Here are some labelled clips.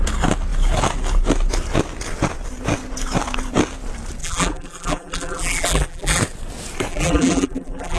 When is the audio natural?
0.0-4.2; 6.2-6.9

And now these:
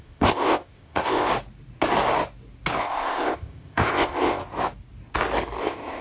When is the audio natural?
1.3-2.8; 4.4-5.6

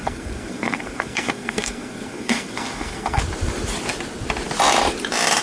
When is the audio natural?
3.2-5.4

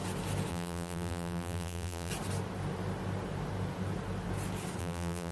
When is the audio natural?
0.0-0.5; 2.1-4.8

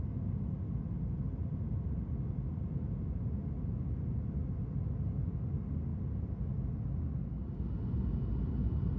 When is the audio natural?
0.0-9.0

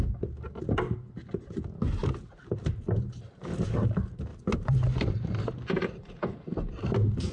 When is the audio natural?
0.0-4.3; 6.0-7.3